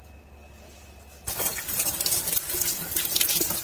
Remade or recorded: recorded